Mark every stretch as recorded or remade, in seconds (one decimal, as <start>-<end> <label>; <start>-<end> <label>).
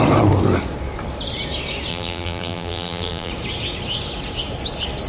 0.0-1.9 recorded; 1.9-3.3 remade; 3.3-5.1 recorded